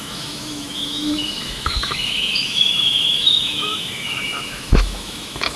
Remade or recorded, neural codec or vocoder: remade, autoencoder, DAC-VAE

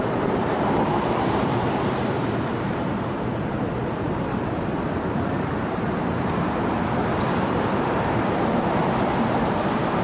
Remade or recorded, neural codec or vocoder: remade, vocoder, BigVGAN v2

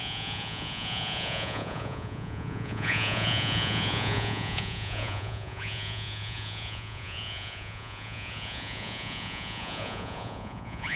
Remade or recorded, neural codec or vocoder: remade, vocoder, Vocos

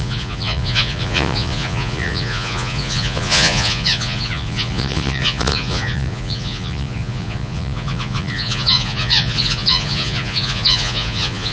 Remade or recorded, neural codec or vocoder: remade, vocoder, Vocos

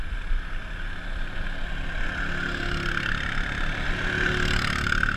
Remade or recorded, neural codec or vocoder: recorded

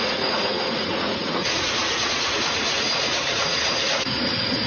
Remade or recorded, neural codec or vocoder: remade, vocoder, Vocos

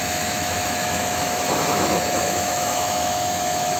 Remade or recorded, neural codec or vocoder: remade, autoencoder, DAC-VAE